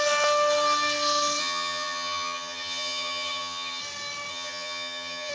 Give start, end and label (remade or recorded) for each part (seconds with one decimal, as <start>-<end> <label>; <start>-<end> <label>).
0.0-1.4 recorded; 1.4-3.8 remade; 3.8-4.3 recorded; 4.3-5.3 remade